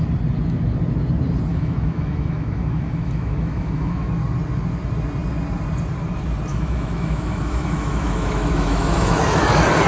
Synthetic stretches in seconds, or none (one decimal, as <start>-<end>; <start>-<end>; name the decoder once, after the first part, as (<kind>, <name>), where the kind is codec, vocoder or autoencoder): 1.5-4.1 (autoencoder, DAC-VAE); 6.5-9.2